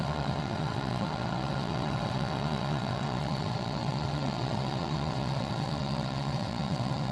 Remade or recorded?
remade